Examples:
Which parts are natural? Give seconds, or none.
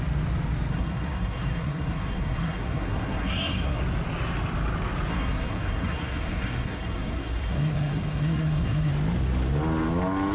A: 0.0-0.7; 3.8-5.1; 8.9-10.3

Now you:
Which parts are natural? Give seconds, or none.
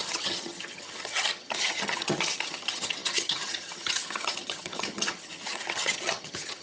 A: none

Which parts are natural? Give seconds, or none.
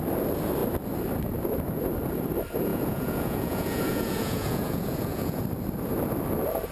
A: 0.0-2.7; 5.4-6.7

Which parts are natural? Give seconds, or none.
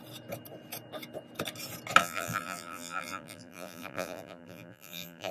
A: 0.0-2.0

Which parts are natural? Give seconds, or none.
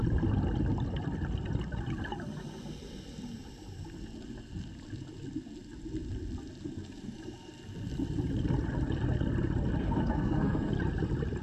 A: 0.0-9.8; 10.7-11.4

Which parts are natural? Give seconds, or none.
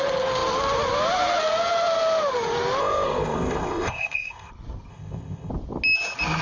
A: 0.0-2.8; 4.5-4.9; 5.5-6.4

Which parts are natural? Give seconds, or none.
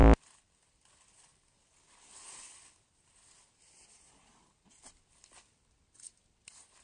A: 0.0-6.8